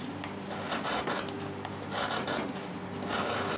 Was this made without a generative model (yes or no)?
yes